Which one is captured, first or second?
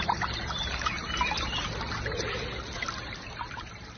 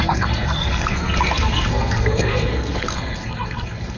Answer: first